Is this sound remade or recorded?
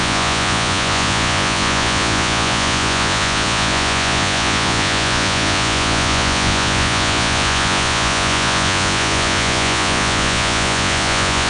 remade